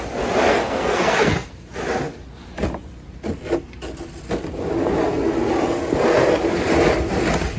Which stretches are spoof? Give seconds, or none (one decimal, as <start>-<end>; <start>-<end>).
0.5-1.5